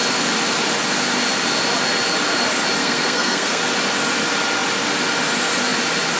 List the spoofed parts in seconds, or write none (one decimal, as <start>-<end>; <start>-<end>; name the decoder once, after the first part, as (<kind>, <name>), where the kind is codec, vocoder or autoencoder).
2.8-3.6 (codec, SNAC)